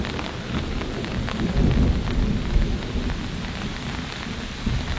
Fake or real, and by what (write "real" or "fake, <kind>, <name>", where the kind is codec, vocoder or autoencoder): real